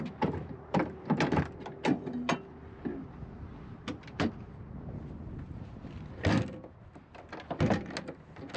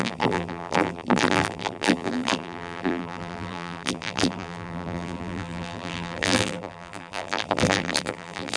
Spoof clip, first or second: second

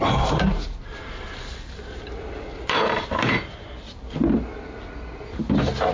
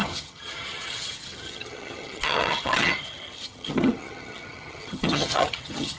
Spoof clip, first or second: second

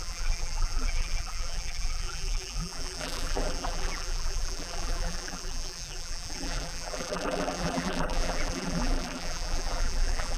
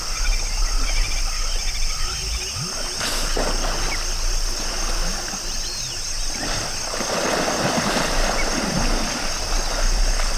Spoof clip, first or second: first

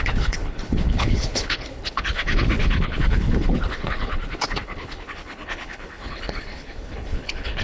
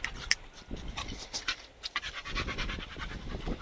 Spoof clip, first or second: first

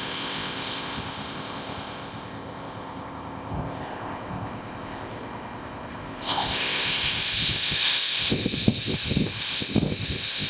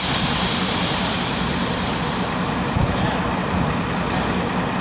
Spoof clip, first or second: first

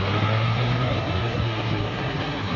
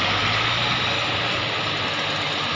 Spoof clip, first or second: first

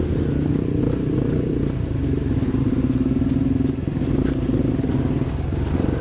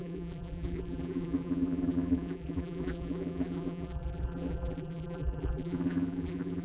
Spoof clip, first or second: second